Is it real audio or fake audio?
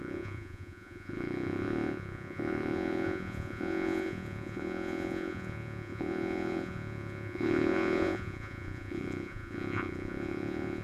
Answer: fake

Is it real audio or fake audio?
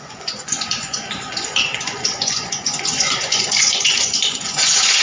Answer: fake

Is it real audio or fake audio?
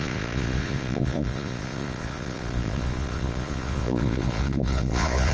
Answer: fake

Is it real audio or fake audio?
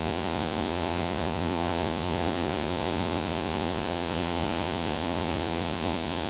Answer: fake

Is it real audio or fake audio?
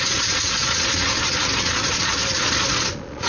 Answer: fake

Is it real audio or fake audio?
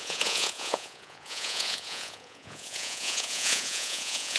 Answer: fake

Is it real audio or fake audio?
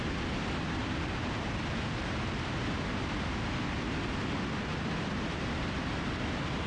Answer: real